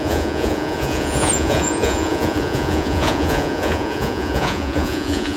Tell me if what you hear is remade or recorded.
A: remade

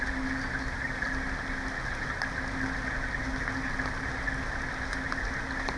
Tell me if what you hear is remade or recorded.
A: recorded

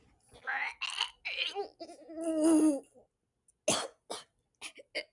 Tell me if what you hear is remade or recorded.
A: recorded